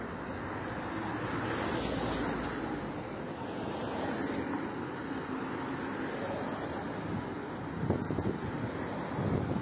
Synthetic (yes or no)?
no